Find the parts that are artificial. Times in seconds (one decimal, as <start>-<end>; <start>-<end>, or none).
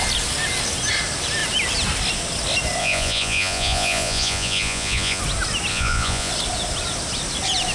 2.8-5.2; 5.7-6.3